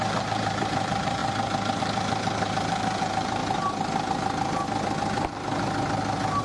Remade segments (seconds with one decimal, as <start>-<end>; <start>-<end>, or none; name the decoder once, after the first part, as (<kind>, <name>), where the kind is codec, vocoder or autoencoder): 0.0-1.2 (vocoder, BigVGAN v2); 1.8-3.4